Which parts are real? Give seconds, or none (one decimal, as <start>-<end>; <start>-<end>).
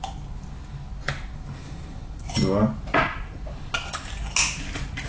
0.0-5.1